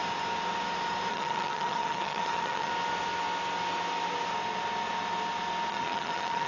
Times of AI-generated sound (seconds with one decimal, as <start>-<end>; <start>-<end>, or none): 1.1-2.7; 5.7-6.5